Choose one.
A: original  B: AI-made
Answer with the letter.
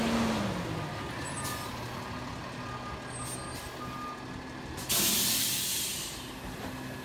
A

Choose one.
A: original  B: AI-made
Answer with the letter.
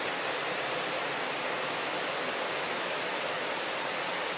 A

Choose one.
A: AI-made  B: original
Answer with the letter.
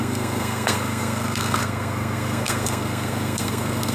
A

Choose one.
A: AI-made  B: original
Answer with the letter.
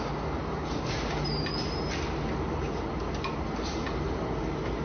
B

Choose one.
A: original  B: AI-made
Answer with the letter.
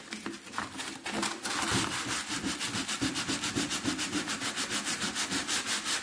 A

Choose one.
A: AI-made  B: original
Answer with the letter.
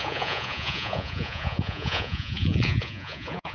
A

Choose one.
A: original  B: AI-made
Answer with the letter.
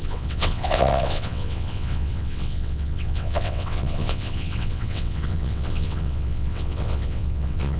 B